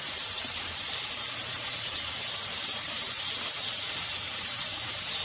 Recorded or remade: remade